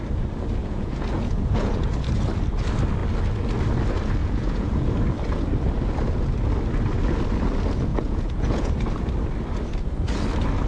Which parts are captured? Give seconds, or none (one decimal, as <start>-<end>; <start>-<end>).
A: 0.0-0.6; 1.9-4.2; 4.9-7.9; 8.7-10.7